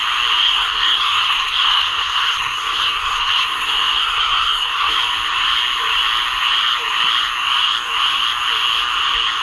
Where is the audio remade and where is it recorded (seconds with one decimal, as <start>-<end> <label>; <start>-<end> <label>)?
0.0-0.4 recorded; 0.4-5.0 remade; 5.0-9.4 recorded